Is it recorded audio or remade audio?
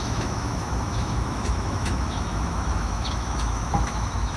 remade